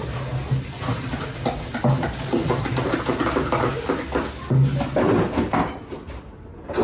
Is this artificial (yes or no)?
no